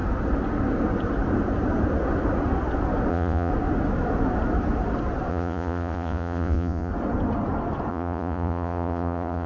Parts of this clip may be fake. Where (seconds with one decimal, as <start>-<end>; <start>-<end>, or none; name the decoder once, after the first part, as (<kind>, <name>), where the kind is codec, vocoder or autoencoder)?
3.1-3.5 (vocoder, Vocos); 5.3-6.9; 7.9-9.5